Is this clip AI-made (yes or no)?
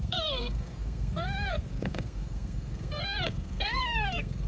yes